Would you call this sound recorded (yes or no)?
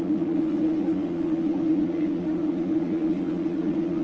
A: no